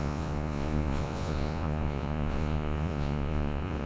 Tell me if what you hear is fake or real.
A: fake